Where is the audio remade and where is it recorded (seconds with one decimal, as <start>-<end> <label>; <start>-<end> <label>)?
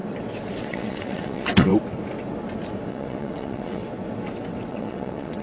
0.0-0.6 recorded; 0.6-1.7 remade; 1.7-2.9 recorded; 2.9-3.8 remade; 3.8-4.7 recorded; 4.7-5.4 remade